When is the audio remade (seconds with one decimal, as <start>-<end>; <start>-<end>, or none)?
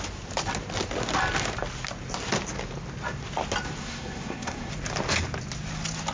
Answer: 3.8-4.7